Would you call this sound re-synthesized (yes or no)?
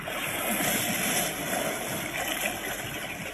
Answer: no